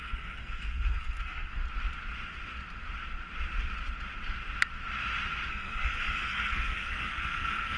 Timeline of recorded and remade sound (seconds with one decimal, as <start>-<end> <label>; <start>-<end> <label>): 0.0-1.6 remade; 1.6-5.5 recorded; 5.5-7.8 remade